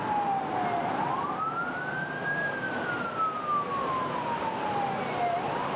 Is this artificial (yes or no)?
no